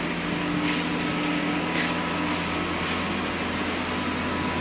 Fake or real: real